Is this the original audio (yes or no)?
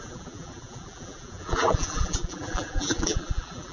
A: no